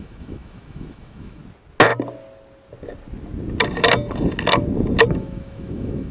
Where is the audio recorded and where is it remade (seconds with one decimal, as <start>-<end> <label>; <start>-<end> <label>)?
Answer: 0.0-1.4 remade; 1.4-5.1 recorded; 5.1-6.1 remade